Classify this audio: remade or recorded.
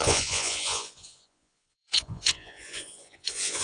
remade